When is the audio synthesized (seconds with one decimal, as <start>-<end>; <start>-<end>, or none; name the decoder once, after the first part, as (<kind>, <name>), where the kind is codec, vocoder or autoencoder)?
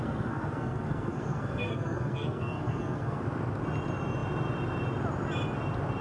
0.0-3.2 (codec, SNAC)